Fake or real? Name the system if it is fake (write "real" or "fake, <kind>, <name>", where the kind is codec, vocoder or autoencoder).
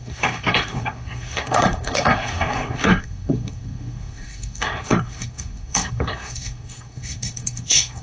fake, codec, SNAC